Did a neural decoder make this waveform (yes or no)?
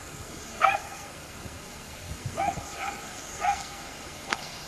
yes